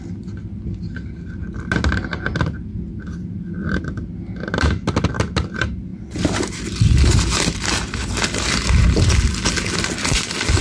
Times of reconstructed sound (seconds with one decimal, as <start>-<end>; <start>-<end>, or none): none